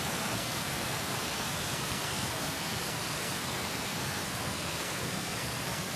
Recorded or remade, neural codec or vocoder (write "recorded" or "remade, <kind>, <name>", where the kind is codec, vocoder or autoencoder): remade, codec, SNAC